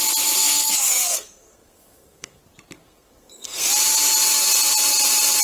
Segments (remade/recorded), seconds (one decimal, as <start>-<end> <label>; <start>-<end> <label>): 0.0-0.4 recorded; 0.4-2.4 remade; 2.4-2.8 recorded; 2.8-3.7 remade; 3.7-5.4 recorded